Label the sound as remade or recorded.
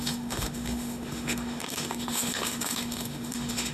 remade